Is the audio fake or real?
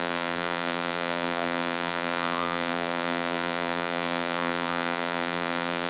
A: fake